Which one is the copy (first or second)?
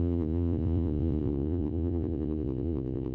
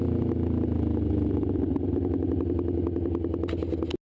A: first